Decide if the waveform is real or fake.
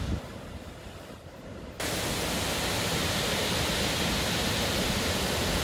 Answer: real